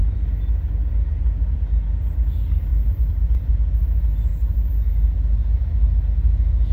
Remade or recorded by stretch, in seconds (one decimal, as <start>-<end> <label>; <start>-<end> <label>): 0.0-2.7 recorded; 2.7-3.5 remade; 3.5-4.3 recorded; 4.3-4.9 remade; 4.9-6.7 recorded